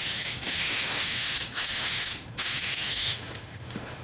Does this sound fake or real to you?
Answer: fake